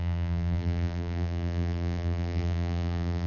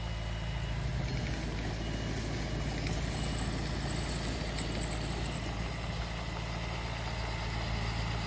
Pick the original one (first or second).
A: second